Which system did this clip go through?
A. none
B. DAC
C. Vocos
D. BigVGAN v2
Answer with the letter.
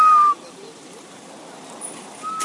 A